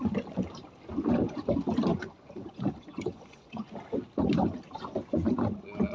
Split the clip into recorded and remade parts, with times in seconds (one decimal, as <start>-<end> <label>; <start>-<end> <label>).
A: 0.0-1.9 recorded; 1.9-3.7 remade; 3.7-5.9 recorded